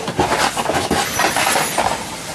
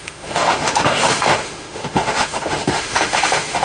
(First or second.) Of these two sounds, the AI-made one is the second